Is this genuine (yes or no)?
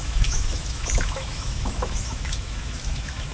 no